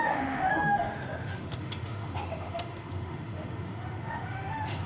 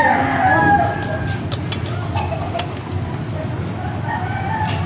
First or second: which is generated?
first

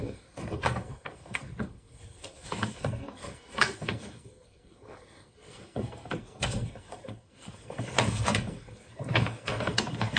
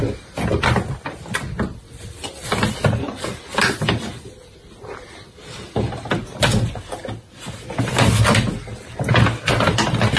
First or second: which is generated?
first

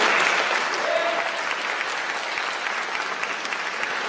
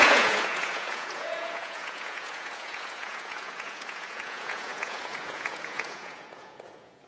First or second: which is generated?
second